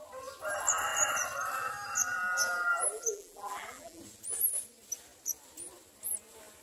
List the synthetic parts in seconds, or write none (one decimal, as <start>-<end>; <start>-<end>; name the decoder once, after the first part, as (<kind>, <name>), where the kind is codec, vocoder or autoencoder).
2.7-4.0 (vocoder, BigVGAN v2)